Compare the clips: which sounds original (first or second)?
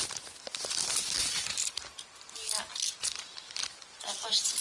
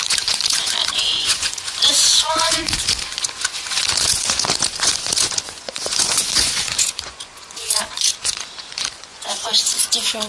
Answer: first